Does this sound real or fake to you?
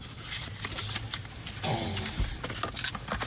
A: real